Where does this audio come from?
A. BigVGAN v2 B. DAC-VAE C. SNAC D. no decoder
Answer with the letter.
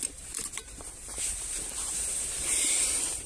A